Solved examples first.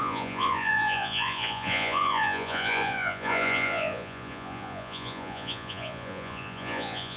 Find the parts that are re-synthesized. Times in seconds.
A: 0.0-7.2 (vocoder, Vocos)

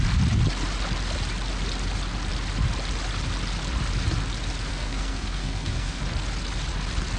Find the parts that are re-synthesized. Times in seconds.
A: 4.7-6.0 (codec, SNAC)

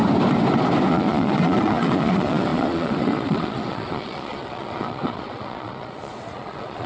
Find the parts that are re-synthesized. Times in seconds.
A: 0.9-6.9 (vocoder, Vocos)

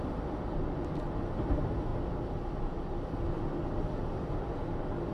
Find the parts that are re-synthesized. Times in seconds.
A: none

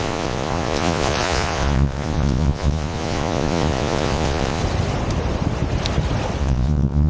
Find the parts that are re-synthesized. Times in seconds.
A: 0.0-4.6 (vocoder, Vocos); 6.4-7.1